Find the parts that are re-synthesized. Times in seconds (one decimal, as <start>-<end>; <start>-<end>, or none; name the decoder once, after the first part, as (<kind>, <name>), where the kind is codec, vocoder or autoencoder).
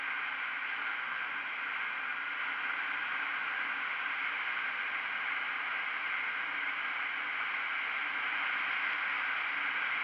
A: 0.8-1.3 (autoencoder, DAC-VAE)